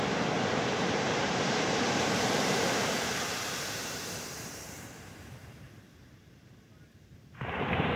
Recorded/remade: remade